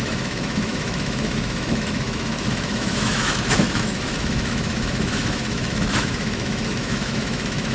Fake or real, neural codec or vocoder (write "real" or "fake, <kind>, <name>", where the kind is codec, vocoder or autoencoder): fake, autoencoder, DAC-VAE